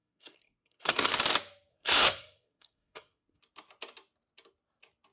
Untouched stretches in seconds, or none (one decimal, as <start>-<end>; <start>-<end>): 1.1-1.7; 3.4-5.1